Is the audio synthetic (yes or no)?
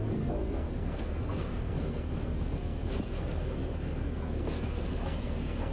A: yes